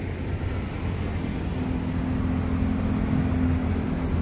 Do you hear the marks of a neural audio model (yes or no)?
no